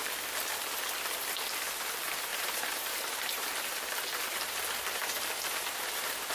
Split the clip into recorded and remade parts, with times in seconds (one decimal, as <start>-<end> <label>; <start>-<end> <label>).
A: 0.0-2.3 recorded; 2.3-3.6 remade; 3.6-6.3 recorded